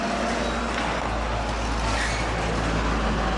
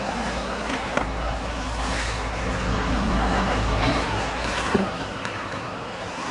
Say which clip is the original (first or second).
first